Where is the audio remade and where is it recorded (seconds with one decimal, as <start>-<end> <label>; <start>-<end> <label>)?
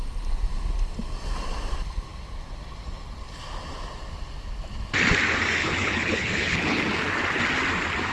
0.0-5.6 recorded; 5.6-6.8 remade; 6.8-8.1 recorded